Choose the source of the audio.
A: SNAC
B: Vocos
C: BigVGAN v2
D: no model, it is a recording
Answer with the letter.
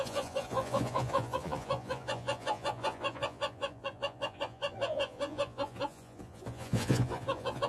B